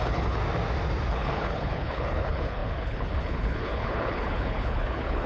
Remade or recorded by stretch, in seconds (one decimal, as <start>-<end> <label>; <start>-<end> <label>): 0.0-0.4 remade; 0.4-1.1 recorded; 1.1-5.3 remade